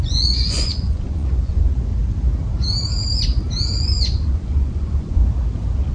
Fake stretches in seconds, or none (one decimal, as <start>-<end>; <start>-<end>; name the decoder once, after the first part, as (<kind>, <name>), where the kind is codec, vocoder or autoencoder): 0.0-1.9 (vocoder, Vocos); 3.7-5.2